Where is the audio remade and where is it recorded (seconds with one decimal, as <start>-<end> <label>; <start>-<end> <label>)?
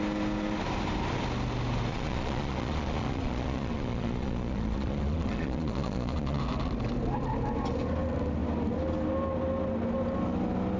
0.0-1.9 recorded; 1.9-6.4 remade; 6.4-10.8 recorded